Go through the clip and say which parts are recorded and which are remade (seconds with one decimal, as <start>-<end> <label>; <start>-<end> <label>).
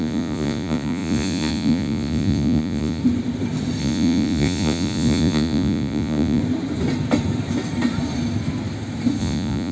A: 0.0-3.0 remade; 3.0-3.8 recorded; 3.8-6.4 remade; 6.4-9.2 recorded; 9.2-9.7 remade